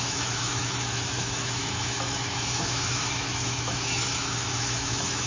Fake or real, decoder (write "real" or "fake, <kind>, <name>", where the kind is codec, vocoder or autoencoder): fake, autoencoder, DAC-VAE